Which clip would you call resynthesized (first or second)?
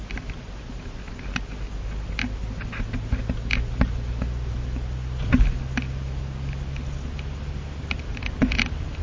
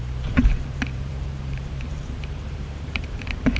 second